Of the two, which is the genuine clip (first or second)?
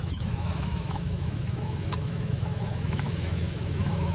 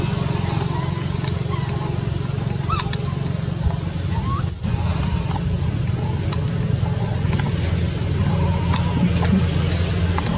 second